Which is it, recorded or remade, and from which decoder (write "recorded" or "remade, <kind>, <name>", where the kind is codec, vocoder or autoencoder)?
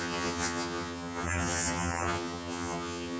remade, vocoder, HiFi-GAN